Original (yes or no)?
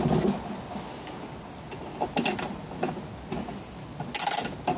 yes